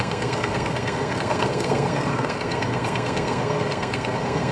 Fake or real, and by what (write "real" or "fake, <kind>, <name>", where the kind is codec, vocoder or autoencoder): fake, codec, SNAC